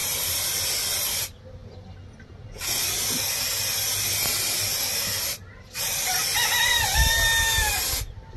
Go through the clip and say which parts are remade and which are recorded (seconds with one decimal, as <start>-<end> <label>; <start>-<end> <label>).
0.0-8.4 recorded